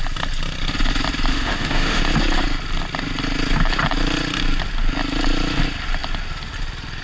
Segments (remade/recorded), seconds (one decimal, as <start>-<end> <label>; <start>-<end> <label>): 0.0-1.3 recorded; 1.3-2.0 remade; 2.0-7.0 recorded